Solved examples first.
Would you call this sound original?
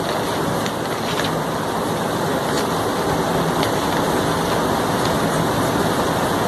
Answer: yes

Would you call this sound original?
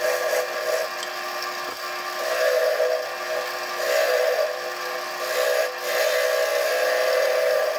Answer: yes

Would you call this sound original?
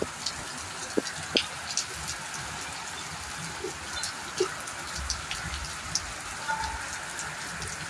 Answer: yes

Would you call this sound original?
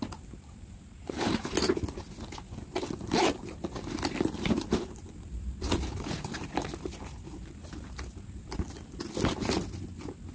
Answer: yes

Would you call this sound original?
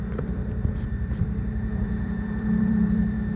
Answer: no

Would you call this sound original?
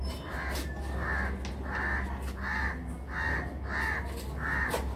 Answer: yes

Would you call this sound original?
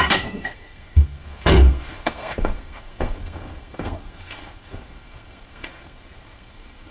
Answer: no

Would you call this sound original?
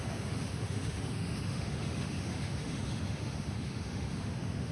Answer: no